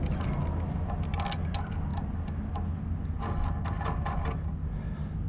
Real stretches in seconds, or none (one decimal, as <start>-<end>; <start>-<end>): 0.0-5.3